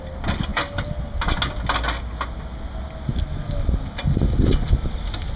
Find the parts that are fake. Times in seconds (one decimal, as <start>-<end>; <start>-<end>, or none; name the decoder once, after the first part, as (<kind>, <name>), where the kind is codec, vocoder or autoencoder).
none